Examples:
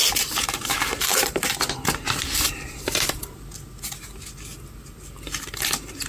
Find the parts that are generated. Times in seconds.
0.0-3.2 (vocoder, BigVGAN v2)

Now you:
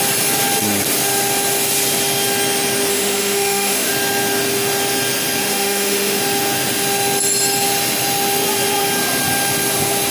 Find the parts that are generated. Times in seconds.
2.9-3.9 (autoencoder, DAC-VAE); 5.4-6.2

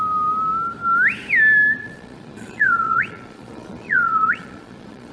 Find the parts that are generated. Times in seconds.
1.8-5.1 (vocoder, Vocos)

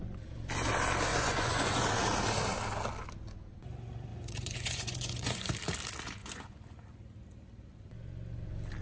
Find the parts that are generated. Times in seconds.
1.1-1.8 (vocoder, Vocos); 4.1-5.5; 6.2-6.8

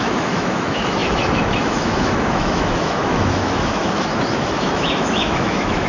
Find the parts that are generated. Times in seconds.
0.0-5.9 (autoencoder, DAC-VAE)

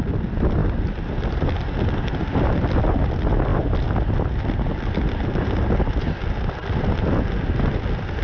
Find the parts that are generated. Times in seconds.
none

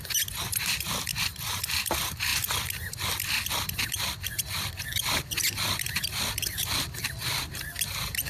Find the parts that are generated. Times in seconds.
0.0-1.1 (vocoder, BigVGAN v2); 1.7-2.3; 3.5-8.3